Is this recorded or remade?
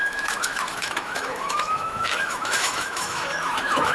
remade